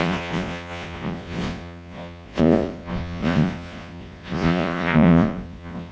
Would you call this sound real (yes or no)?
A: no